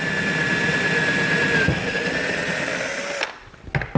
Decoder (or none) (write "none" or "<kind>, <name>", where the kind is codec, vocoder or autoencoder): none